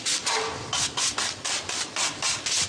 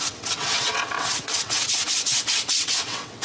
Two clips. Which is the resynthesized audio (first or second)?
second